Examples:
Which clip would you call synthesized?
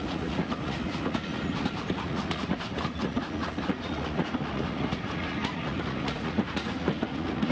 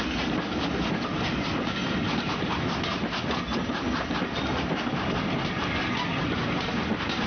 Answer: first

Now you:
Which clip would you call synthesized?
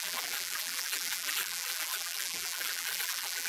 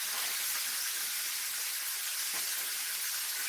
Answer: first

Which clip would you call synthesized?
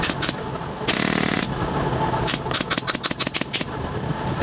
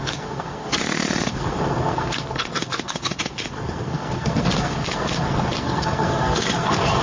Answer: second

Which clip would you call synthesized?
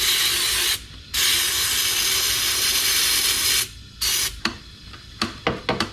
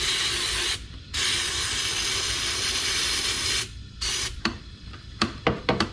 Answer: second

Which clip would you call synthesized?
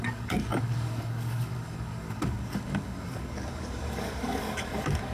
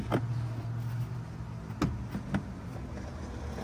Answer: first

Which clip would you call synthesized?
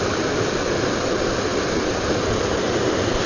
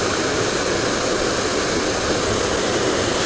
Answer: first